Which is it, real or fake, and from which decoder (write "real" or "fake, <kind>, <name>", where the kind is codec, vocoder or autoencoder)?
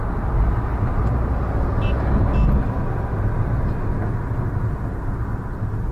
real